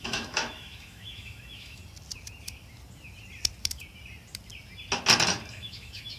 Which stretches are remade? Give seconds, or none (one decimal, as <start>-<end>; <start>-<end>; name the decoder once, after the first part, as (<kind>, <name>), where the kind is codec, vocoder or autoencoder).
0.0-1.8 (autoencoder, DAC-VAE); 5.5-6.2